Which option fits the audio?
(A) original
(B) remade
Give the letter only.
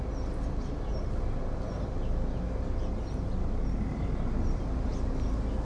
A